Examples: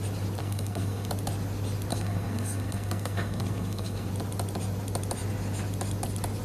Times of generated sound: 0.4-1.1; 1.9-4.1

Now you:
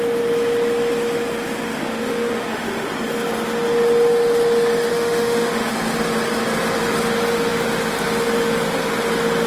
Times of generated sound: 1.8-2.9; 4.9-5.7

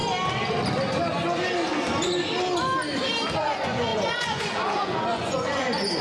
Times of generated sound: 3.4-6.0

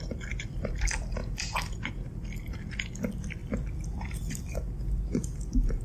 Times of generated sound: 0.0-5.8